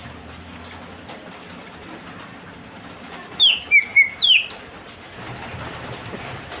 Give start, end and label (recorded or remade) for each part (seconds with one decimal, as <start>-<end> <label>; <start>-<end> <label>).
0.0-6.6 recorded